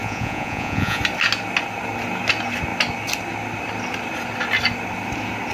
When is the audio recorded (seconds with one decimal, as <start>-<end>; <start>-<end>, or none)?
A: 1.0-5.5